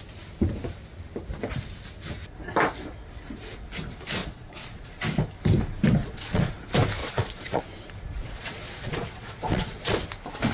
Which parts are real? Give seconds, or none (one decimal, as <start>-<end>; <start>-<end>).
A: 0.0-4.2; 4.9-6.0; 6.5-7.0; 7.6-8.2; 10.0-10.5

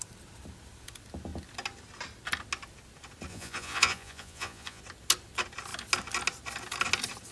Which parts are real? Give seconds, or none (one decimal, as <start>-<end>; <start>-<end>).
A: 0.0-3.3; 4.8-7.3

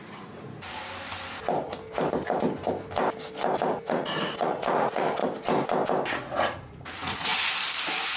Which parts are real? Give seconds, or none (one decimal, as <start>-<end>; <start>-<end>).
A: 0.8-3.7; 5.2-6.1; 7.3-8.2

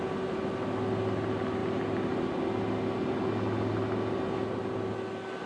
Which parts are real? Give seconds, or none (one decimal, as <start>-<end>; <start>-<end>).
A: 0.0-5.5

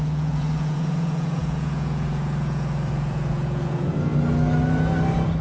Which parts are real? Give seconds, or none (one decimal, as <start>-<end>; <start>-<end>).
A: 4.1-5.4

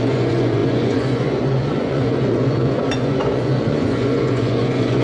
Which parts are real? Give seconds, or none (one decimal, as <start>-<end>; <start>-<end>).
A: none

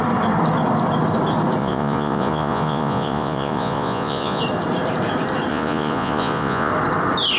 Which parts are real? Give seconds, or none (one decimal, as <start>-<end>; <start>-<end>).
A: 0.0-1.6; 4.4-5.5; 6.7-7.4

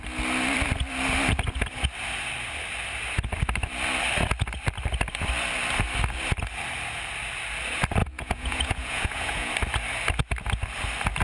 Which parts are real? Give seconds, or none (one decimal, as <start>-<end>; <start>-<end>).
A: 0.0-8.0; 9.5-11.2